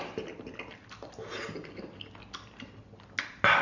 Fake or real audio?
real